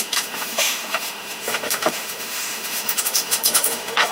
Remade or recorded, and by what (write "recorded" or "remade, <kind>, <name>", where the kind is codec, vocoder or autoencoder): remade, autoencoder, DAC-VAE